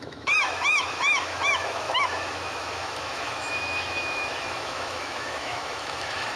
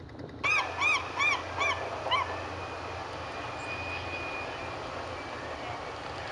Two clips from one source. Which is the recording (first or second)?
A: second